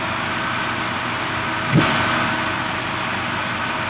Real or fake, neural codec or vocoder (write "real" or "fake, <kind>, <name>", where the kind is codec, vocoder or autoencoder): real